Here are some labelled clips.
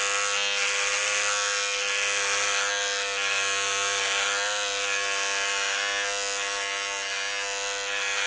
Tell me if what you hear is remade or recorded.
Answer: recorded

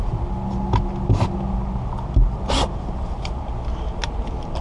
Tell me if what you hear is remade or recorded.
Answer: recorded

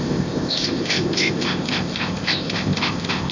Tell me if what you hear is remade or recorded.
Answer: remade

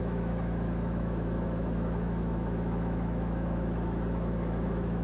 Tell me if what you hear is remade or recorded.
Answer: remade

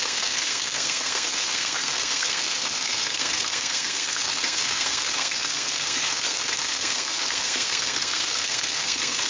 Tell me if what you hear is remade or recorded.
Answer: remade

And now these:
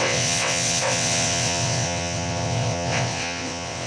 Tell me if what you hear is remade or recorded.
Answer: remade